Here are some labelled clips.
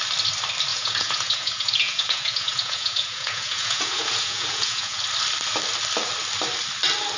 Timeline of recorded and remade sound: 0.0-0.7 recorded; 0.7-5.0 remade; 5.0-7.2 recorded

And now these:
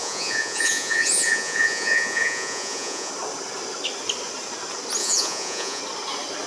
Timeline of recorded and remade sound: 0.0-3.1 remade; 3.1-5.0 recorded; 5.0-5.8 remade; 5.8-6.5 recorded

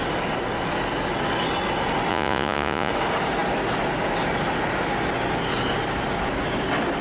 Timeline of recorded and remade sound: 0.0-2.1 recorded; 2.1-2.9 remade; 2.9-7.0 recorded

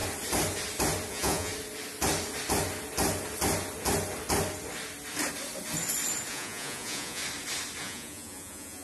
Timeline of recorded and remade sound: 0.0-1.1 recorded; 1.1-1.5 remade; 1.5-6.3 recorded; 6.3-7.2 remade; 7.2-7.8 recorded; 7.8-8.8 remade

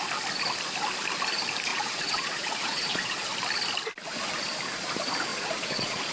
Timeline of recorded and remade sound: 0.0-1.7 recorded; 1.7-3.3 remade; 3.3-5.3 recorded; 5.3-6.1 remade

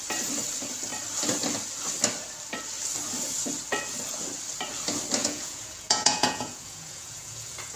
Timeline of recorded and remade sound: 0.0-5.2 recorded; 5.2-7.8 remade